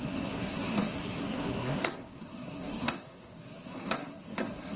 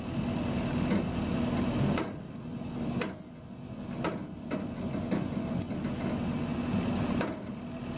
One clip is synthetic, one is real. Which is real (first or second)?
second